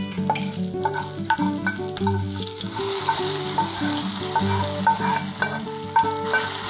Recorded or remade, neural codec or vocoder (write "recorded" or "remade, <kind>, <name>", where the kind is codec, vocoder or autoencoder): recorded